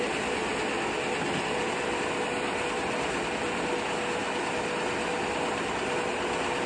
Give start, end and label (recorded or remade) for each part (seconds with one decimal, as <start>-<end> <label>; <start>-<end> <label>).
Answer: 0.0-6.7 recorded